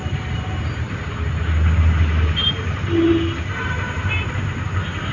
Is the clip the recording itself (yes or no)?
yes